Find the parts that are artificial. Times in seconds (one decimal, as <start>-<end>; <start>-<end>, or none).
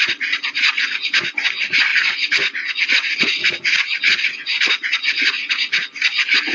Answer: none